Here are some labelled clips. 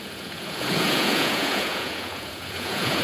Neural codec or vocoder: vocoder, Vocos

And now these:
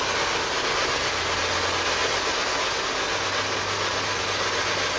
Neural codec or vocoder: none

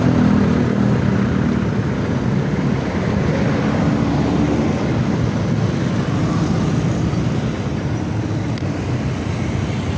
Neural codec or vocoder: none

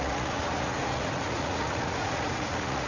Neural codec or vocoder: vocoder, Vocos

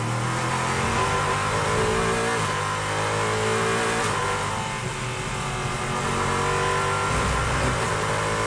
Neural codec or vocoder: none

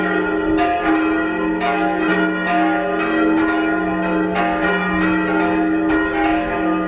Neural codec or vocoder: none